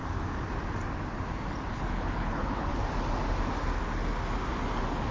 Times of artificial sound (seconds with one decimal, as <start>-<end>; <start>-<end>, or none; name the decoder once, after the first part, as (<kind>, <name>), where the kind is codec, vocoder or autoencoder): 1.7-2.7 (codec, HILCodec)